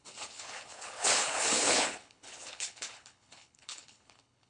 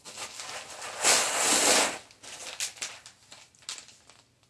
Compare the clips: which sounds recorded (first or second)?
second